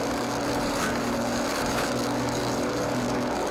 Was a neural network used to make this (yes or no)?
yes